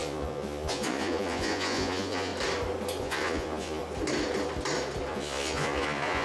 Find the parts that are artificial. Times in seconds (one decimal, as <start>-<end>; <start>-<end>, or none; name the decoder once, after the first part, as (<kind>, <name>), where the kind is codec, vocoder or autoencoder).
0.0-2.3 (vocoder, Vocos); 3.0-3.8; 5.1-6.2